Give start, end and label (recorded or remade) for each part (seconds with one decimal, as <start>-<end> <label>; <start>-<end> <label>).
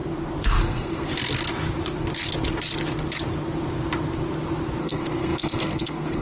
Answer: 0.0-0.6 recorded; 0.6-1.1 remade; 1.1-4.8 recorded; 4.8-6.2 remade